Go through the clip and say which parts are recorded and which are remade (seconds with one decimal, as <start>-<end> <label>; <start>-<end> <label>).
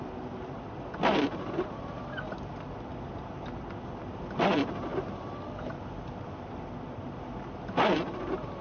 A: 0.0-8.6 recorded